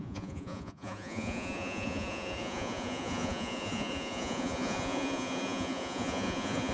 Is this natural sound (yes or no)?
no